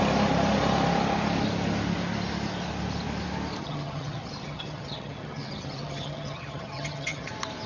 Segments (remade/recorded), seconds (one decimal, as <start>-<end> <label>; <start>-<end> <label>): 0.0-3.6 recorded; 3.6-7.3 remade; 7.3-7.7 recorded